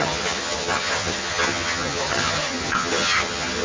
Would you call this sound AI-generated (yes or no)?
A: yes